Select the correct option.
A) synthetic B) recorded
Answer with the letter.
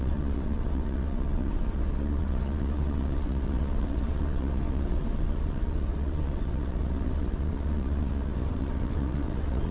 A